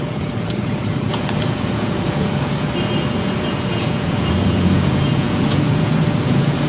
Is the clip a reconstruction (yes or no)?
yes